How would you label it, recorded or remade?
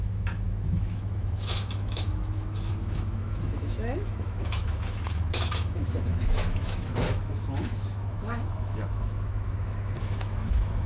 remade